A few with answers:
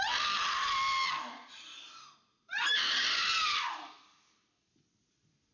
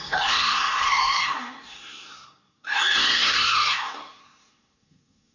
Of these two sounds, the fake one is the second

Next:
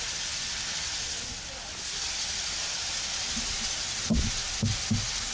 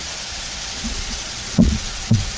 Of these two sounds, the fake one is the second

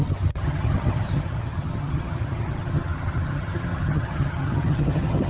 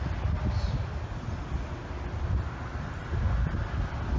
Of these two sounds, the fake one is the first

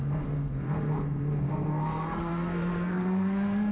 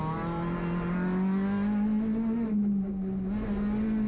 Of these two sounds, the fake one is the first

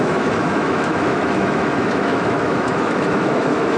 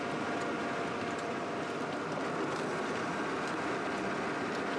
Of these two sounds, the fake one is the first